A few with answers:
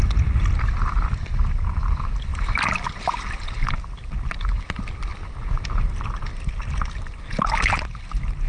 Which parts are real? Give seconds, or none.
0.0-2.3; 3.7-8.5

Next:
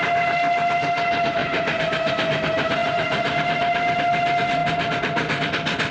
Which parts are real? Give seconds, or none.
0.0-1.4; 2.1-5.9

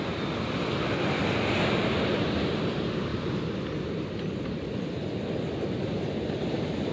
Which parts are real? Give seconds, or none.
0.0-6.9